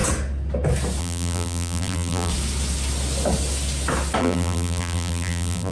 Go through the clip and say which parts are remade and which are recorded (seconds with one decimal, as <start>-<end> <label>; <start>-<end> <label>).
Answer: 0.0-1.0 recorded; 1.0-2.3 remade; 2.3-4.2 recorded; 4.2-5.7 remade